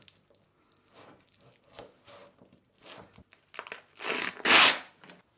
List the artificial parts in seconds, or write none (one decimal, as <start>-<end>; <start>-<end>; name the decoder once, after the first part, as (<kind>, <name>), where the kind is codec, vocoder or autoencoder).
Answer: none